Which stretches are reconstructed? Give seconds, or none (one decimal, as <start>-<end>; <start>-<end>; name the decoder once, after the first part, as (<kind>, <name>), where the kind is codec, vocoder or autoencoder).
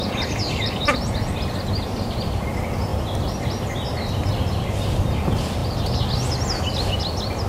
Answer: none